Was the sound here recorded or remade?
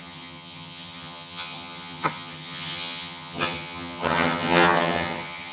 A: remade